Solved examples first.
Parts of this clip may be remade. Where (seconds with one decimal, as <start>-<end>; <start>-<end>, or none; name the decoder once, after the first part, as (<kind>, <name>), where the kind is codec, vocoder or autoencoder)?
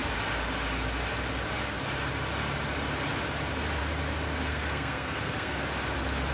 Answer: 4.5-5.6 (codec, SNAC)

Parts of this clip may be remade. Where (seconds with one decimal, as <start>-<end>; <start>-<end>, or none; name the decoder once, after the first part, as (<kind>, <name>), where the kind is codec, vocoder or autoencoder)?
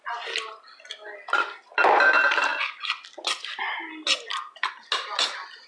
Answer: none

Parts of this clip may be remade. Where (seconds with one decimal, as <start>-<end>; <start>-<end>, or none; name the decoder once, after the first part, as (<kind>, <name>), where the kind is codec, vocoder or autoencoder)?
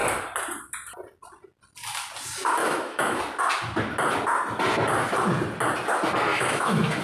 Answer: 2.6-3.2 (autoencoder, DAC-VAE); 6.3-7.0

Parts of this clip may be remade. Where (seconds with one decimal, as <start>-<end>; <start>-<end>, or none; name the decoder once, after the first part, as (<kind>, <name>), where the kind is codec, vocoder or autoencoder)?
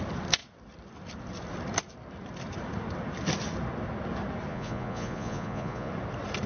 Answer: 4.5-5.9 (vocoder, Vocos)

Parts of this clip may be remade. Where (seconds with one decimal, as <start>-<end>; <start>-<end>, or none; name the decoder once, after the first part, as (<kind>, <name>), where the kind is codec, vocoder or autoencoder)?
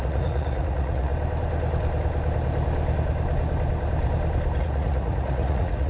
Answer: 0.0-1.1 (vocoder, Vocos); 4.6-5.9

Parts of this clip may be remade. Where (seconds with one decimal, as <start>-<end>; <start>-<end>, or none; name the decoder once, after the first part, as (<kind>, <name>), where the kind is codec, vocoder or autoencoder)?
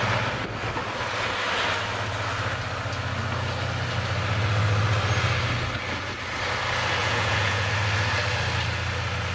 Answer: 7.0-7.7 (vocoder, Vocos)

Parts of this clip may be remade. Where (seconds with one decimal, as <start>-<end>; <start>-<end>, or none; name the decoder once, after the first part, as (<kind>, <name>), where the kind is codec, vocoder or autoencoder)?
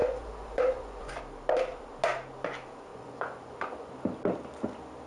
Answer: 0.0-1.2 (vocoder, Vocos); 2.9-3.9